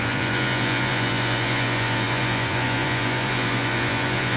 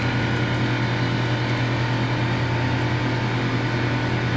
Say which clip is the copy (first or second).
first